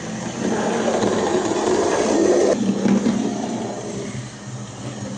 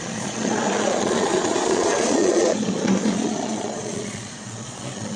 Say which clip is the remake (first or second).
second